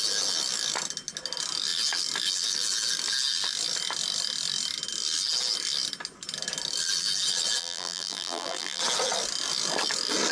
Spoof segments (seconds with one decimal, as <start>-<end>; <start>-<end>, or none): 7.6-8.8